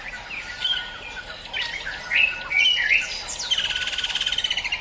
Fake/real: real